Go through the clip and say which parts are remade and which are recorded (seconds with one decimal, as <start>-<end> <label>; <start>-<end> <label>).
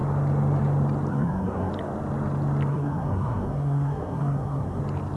0.0-1.1 recorded; 1.1-1.7 remade; 1.7-2.7 recorded; 2.7-4.8 remade; 4.8-5.2 recorded